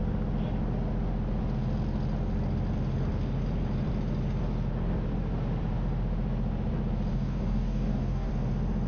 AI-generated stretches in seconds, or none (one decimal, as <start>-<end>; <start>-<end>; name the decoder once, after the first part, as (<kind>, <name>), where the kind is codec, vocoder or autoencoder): 7.1-8.3 (codec, DAC)